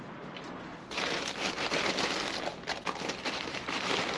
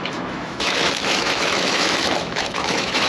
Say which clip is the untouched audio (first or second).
first